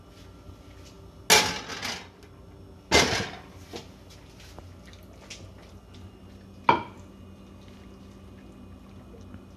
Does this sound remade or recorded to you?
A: recorded